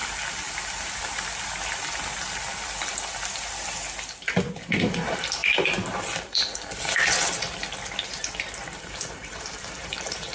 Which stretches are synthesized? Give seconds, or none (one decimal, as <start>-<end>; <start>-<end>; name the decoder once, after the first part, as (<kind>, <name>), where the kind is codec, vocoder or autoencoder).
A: 5.0-5.4 (vocoder, BigVGAN v2); 8.8-10.3